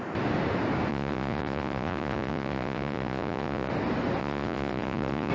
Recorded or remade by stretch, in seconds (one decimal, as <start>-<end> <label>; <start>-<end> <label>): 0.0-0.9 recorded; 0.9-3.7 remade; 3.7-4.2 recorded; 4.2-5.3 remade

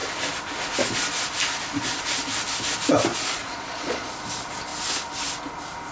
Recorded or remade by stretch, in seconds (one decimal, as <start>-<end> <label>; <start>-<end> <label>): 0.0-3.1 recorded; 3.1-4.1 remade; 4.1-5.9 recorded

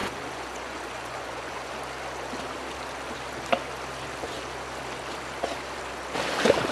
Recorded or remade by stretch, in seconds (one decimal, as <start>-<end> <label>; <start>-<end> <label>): 0.0-1.7 remade; 1.7-6.7 recorded

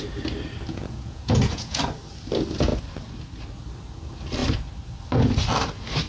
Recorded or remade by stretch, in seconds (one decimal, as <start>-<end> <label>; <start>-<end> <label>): 0.0-0.7 recorded; 0.7-1.8 remade; 1.8-6.1 recorded